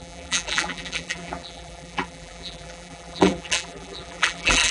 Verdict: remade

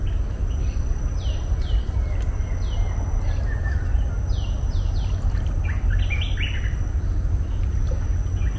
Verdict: recorded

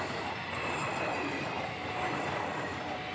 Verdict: recorded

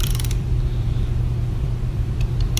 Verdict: remade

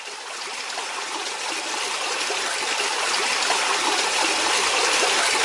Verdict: remade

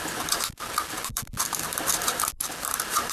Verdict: remade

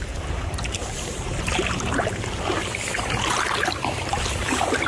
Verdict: remade